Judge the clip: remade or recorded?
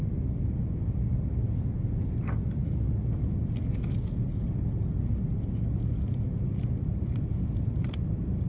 recorded